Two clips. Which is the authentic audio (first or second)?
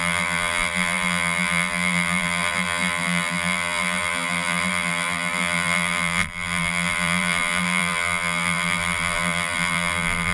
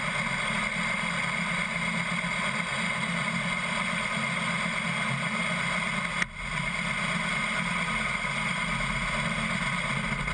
second